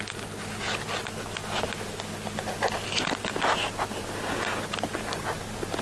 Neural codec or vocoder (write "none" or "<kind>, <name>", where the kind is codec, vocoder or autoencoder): none